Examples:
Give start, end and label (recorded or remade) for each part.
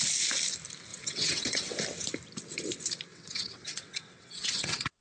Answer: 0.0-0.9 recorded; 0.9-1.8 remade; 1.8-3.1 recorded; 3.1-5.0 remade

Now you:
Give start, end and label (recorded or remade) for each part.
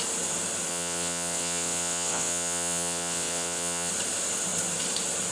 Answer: 0.0-0.7 recorded; 0.7-3.9 remade; 3.9-5.3 recorded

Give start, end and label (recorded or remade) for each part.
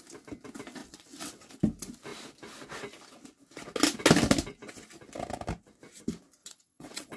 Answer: 0.0-0.8 recorded; 0.8-1.5 remade; 1.5-6.4 recorded; 6.4-7.2 remade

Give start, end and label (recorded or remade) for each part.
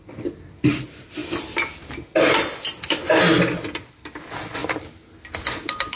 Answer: 0.0-6.0 recorded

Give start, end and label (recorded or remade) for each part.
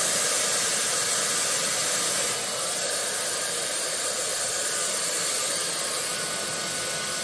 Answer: 0.0-7.2 recorded